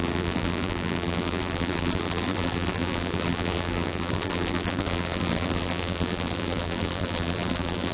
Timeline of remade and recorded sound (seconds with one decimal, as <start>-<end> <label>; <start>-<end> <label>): 0.0-7.9 remade